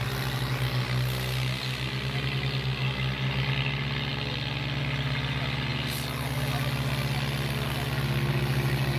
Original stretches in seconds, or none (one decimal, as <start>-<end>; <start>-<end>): 0.0-9.0